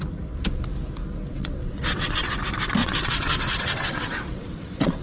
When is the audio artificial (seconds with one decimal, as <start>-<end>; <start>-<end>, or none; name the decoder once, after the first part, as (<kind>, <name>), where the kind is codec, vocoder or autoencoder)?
1.3-2.3 (vocoder, WaveNeXt); 2.8-5.0